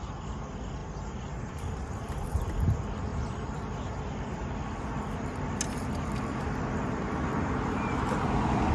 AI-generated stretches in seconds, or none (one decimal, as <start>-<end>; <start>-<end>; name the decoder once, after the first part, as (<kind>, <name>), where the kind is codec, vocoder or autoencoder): 0.8-2.6 (vocoder, BigVGAN v2)